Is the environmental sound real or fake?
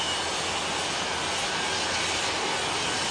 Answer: real